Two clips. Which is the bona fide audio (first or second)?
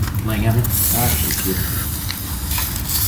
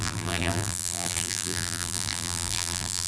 first